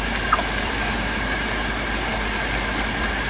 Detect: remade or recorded recorded